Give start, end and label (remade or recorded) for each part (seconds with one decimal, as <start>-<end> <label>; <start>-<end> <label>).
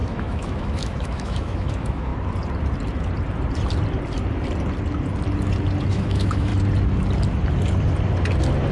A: 0.0-2.1 remade; 2.1-5.9 recorded; 5.9-6.5 remade; 6.5-8.7 recorded